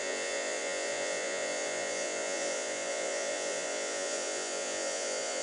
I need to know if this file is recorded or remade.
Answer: remade